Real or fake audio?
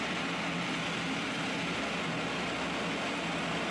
real